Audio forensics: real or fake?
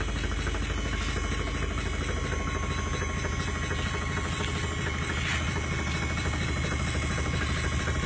real